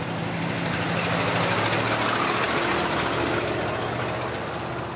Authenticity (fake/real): real